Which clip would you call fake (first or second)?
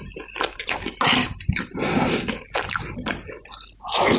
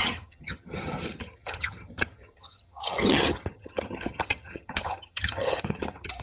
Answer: second